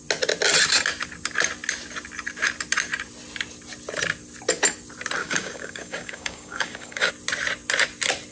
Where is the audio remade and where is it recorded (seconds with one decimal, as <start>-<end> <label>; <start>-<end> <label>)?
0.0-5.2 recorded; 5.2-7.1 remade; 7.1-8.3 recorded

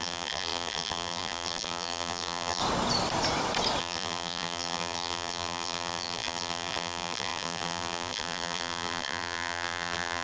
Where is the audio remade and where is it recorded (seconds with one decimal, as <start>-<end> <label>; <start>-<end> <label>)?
0.0-2.6 remade; 2.6-3.8 recorded; 3.8-10.2 remade

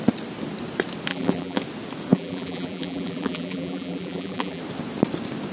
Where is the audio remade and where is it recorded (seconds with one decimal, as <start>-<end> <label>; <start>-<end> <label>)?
0.0-1.1 recorded; 1.1-1.6 remade; 1.6-2.1 recorded; 2.1-4.6 remade; 4.6-5.5 recorded